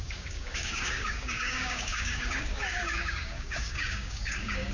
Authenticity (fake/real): fake